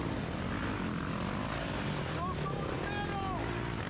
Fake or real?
real